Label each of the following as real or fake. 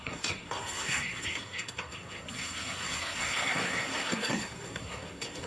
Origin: fake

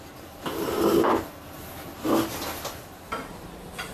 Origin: real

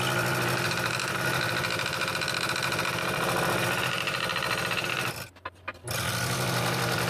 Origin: real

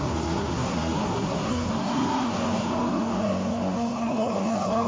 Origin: fake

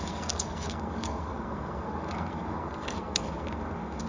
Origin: fake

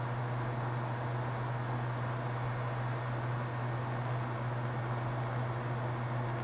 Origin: real